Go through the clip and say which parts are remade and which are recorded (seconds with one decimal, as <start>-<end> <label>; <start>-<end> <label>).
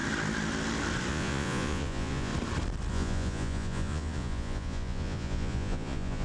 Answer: 0.0-1.1 recorded; 1.1-2.3 remade; 2.3-2.9 recorded; 2.9-6.2 remade